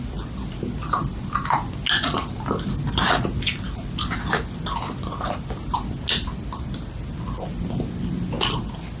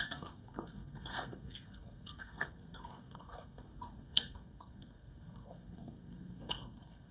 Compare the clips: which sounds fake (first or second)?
second